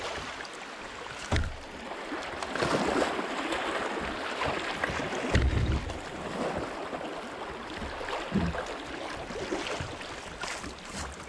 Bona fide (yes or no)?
yes